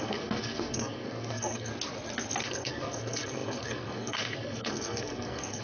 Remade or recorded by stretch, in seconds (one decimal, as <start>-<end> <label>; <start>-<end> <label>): 0.0-1.7 remade; 1.7-2.4 recorded; 2.4-5.6 remade